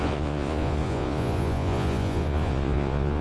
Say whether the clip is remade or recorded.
remade